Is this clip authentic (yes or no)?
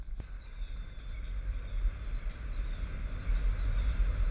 yes